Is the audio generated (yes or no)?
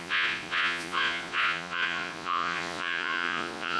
yes